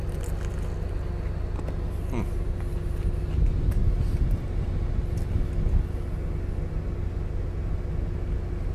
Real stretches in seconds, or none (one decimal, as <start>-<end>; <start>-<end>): 0.0-8.7